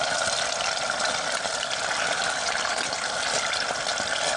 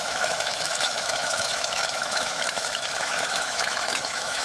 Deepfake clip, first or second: second